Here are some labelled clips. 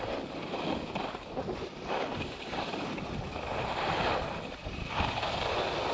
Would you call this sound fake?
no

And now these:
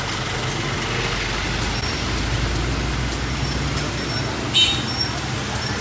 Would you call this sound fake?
no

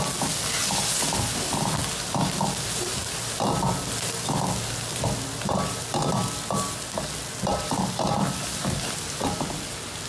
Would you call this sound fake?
no